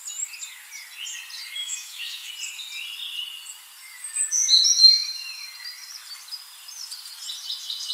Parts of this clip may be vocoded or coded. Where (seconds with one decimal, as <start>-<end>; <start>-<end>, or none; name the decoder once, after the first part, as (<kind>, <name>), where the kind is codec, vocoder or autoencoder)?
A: 1.6-2.3 (autoencoder, DAC-VAE)